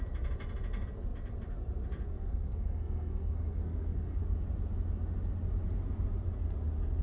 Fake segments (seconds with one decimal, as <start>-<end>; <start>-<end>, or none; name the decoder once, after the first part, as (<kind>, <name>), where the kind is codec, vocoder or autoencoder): 2.1-4.2 (codec, SNAC)